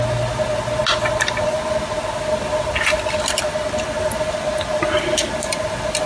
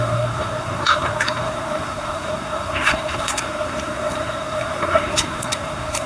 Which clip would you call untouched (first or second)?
first